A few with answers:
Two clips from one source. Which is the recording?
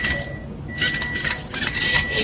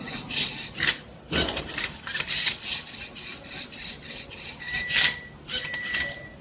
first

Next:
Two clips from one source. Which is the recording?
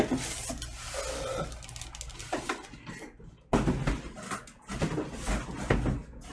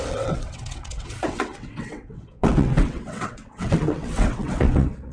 first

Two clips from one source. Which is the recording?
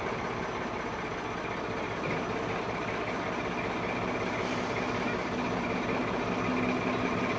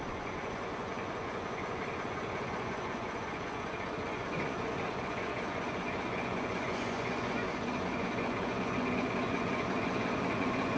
first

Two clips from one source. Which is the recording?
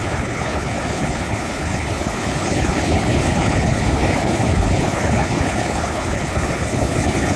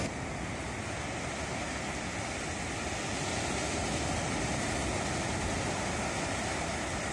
second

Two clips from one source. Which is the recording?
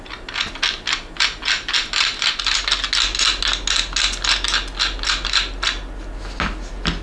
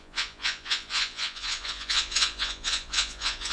first